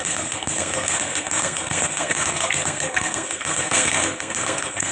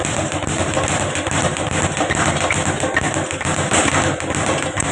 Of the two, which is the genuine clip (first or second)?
second